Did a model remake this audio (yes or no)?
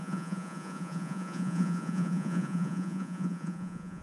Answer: yes